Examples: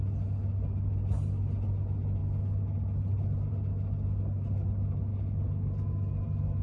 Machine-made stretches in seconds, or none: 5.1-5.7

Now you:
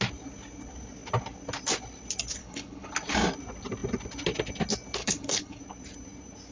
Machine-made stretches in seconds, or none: 2.4-2.9; 5.0-5.6

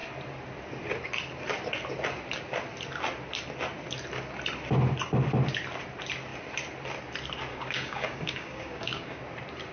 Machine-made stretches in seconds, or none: 7.5-9.2

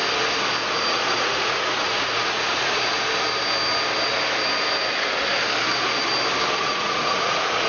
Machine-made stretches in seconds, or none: 0.8-2.8; 6.6-7.7